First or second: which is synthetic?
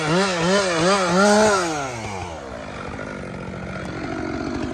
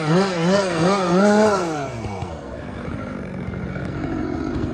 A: second